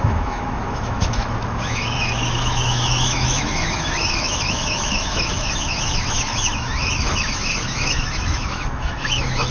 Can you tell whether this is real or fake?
fake